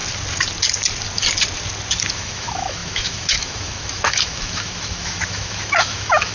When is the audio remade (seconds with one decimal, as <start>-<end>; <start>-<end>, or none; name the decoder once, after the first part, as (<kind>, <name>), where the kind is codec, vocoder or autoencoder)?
2.1-6.3 (autoencoder, DAC-VAE)